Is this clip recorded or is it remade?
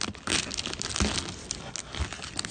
recorded